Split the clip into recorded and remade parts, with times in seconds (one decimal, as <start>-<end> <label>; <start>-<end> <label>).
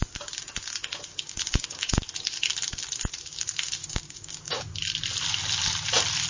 0.0-1.1 recorded; 1.1-2.0 remade; 2.0-3.8 recorded; 3.8-4.7 remade; 4.7-6.3 recorded